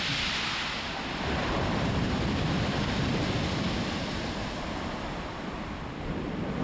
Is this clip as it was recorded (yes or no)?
no